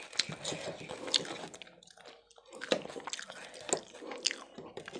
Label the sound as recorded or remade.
recorded